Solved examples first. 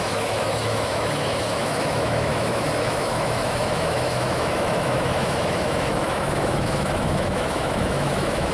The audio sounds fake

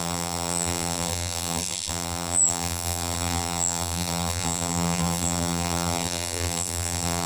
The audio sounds fake